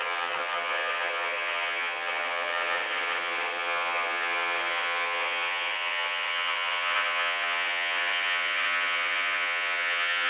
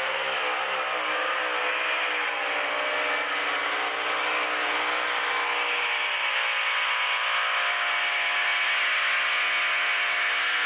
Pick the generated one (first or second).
first